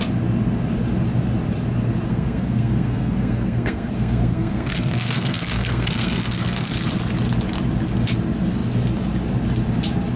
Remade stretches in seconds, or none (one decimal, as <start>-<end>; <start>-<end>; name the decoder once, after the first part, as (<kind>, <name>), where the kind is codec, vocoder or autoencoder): 2.1-6.7 (codec, SNAC)